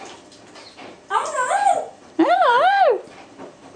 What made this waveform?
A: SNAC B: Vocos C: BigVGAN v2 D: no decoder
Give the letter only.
C